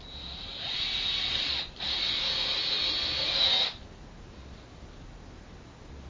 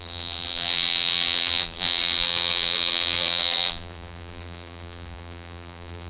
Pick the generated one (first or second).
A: second